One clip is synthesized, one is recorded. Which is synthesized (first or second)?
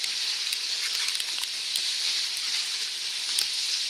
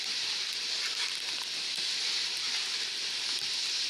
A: second